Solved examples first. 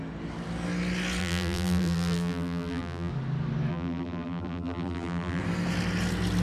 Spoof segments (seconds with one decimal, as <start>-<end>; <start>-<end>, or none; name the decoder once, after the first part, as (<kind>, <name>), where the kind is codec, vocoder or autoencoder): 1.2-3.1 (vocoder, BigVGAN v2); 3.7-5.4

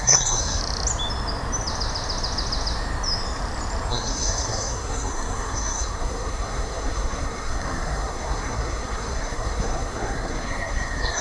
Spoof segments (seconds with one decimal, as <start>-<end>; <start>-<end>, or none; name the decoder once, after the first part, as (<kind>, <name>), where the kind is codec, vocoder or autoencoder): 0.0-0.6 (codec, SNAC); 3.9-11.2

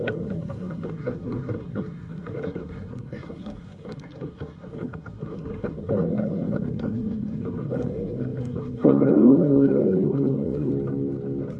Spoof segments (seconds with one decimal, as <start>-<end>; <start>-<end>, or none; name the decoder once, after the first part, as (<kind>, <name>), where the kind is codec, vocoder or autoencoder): 0.0-10.7 (codec, SNAC)